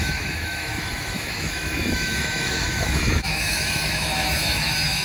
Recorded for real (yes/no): no